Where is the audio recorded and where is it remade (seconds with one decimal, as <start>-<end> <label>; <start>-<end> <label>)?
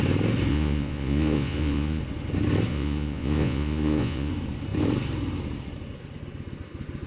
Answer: 0.0-0.5 recorded; 0.5-2.0 remade; 2.0-2.7 recorded; 2.7-4.3 remade; 4.3-7.1 recorded